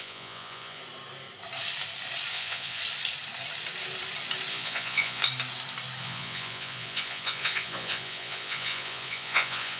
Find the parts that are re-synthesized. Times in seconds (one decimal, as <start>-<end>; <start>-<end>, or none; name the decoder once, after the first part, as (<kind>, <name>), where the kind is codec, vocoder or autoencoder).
0.0-0.8 (vocoder, Vocos); 2.3-2.8; 4.5-5.2; 6.0-9.8